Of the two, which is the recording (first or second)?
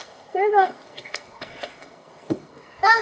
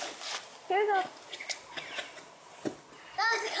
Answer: second